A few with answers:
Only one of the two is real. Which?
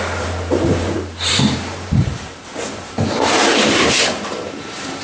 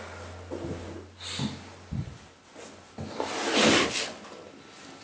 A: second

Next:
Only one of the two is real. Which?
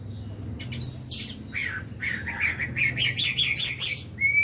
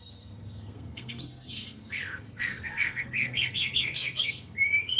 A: first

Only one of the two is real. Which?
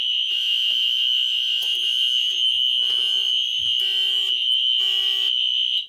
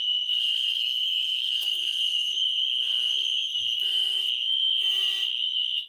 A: first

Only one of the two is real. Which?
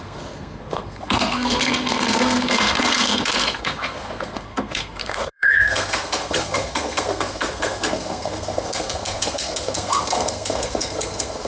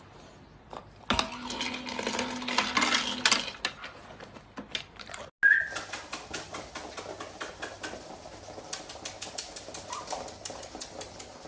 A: second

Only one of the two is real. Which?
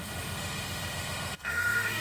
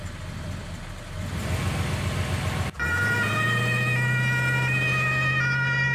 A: second